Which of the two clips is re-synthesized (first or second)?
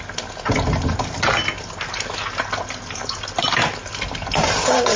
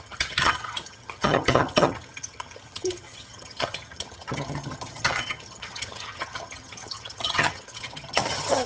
second